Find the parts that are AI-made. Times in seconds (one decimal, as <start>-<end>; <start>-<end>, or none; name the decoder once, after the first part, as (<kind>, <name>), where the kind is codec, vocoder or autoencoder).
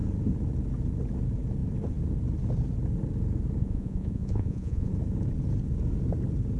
3.6-4.9 (vocoder, Vocos)